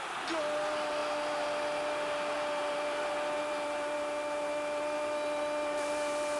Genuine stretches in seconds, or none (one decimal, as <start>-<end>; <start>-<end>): 0.0-6.4